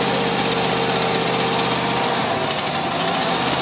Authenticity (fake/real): real